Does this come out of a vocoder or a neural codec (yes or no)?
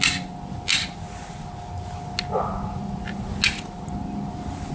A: no